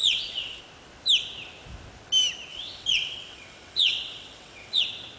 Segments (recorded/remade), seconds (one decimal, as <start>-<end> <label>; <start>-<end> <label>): 0.0-0.6 remade; 0.6-2.5 recorded; 2.5-4.8 remade; 4.8-5.2 recorded